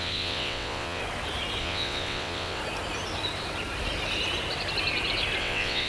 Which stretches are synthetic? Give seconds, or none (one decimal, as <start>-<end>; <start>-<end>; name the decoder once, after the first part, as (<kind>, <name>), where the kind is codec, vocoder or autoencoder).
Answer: 0.0-1.0 (vocoder, WaveNeXt); 1.6-2.6; 5.4-5.9